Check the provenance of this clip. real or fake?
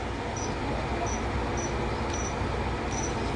real